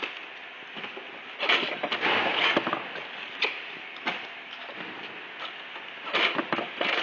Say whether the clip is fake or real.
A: real